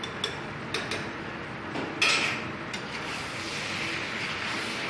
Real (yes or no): yes